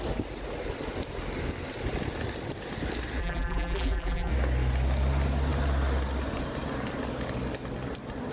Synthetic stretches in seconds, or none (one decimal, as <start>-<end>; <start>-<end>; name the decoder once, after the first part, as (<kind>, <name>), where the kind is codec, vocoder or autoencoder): 3.2-4.3 (vocoder, BigVGAN v2)